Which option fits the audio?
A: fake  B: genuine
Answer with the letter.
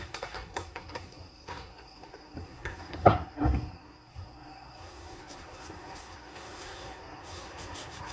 A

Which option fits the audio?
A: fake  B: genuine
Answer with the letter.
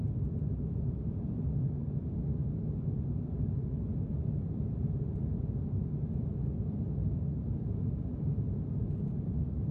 B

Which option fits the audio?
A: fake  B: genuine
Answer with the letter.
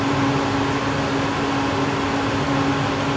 B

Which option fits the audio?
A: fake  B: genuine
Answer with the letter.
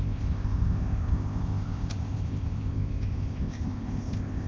A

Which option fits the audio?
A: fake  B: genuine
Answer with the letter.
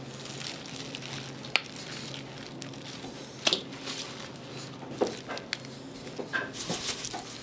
B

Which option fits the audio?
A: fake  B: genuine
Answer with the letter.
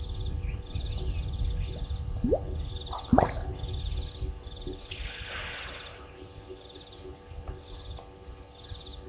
B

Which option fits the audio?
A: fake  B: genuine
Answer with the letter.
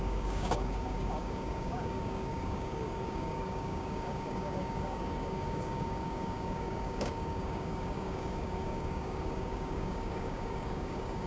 A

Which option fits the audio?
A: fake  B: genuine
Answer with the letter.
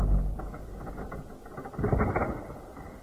B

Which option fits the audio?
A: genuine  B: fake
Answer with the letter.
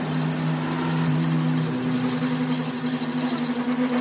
A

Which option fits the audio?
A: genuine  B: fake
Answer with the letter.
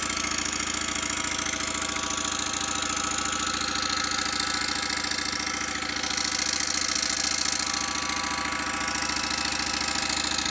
A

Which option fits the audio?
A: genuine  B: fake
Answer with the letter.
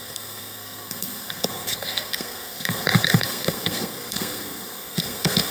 B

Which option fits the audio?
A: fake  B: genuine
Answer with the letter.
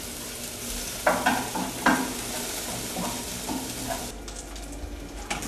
B